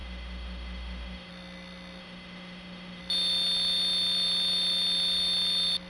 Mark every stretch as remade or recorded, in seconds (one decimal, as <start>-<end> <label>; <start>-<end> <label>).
0.0-1.3 remade; 1.3-2.0 recorded; 2.0-3.0 remade; 3.0-5.9 recorded